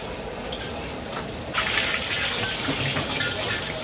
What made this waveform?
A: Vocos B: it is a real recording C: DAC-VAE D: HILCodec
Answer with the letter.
B